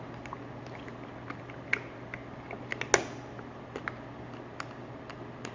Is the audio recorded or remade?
recorded